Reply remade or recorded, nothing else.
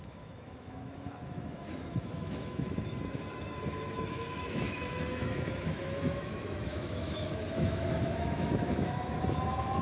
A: remade